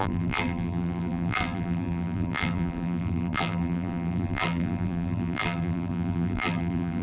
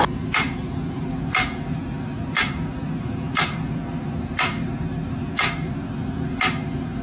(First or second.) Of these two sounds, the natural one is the second